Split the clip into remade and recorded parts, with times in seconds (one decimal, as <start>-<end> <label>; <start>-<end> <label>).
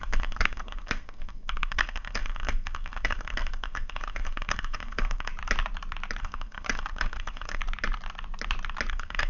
0.0-5.3 remade; 5.3-6.2 recorded; 6.2-7.6 remade; 7.6-8.9 recorded; 8.9-9.3 remade